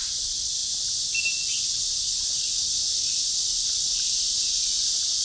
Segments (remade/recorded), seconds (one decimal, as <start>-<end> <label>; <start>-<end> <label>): 0.0-5.2 recorded